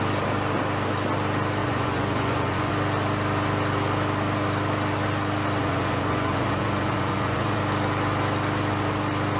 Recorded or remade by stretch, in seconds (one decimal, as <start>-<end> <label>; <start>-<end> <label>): 0.0-1.6 recorded; 1.6-2.7 remade; 2.7-5.6 recorded; 5.6-7.6 remade; 7.6-9.4 recorded